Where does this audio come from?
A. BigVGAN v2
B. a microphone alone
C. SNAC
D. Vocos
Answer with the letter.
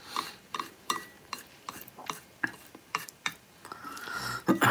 A